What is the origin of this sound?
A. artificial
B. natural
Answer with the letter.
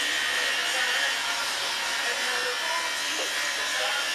B